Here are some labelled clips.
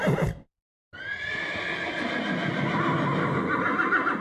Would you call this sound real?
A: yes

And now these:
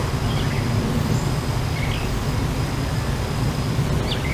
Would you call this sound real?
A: yes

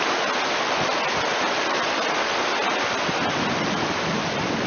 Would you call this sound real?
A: yes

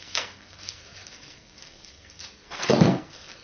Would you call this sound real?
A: no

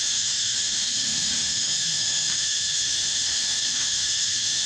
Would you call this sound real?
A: no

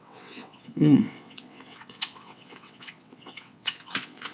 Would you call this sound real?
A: no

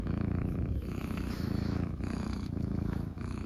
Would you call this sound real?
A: no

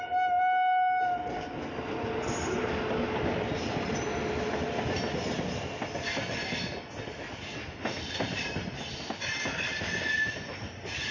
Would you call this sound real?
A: yes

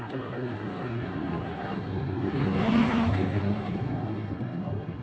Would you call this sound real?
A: no